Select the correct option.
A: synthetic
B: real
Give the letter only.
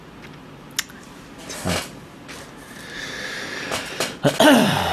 B